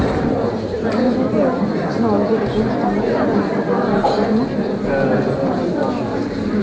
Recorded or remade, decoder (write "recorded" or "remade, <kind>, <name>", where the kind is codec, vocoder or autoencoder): recorded